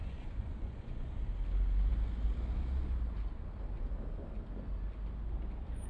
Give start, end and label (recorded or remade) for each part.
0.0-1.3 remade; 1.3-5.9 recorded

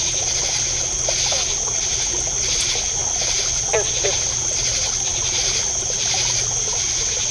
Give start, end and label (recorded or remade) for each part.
0.0-7.3 recorded

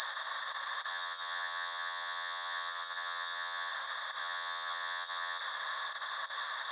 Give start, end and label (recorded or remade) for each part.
0.0-0.9 recorded; 0.9-3.7 remade; 3.7-4.2 recorded; 4.2-5.4 remade; 5.4-6.7 recorded

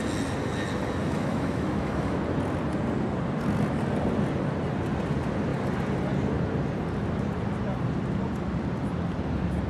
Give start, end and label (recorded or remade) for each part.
0.0-1.0 recorded; 1.0-2.2 remade; 2.2-9.7 recorded

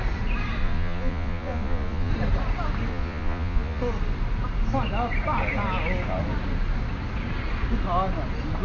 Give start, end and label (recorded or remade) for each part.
0.0-0.6 recorded; 0.6-2.1 remade; 2.1-2.9 recorded; 2.9-3.8 remade; 3.8-8.6 recorded

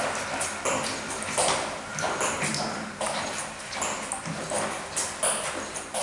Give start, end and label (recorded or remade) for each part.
0.0-6.0 recorded

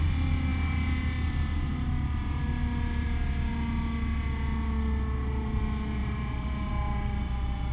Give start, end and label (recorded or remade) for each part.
0.0-6.0 recorded; 6.0-6.7 remade; 6.7-7.7 recorded

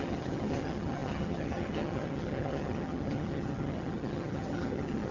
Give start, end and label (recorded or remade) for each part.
0.0-5.1 remade